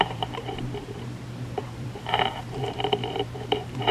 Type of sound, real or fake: fake